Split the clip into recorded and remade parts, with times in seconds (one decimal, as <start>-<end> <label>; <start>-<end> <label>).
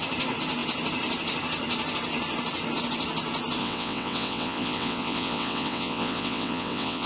0.0-3.6 recorded; 3.6-7.1 remade